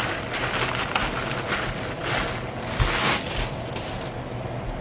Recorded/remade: recorded